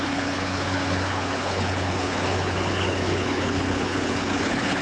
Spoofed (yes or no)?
yes